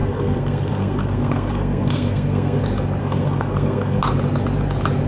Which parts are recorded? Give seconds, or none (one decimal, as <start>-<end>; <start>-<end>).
2.6-3.0; 4.0-5.1